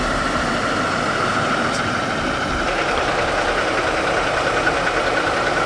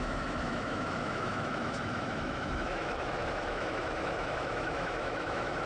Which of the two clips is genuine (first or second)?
first